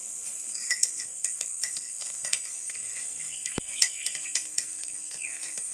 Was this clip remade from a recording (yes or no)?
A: yes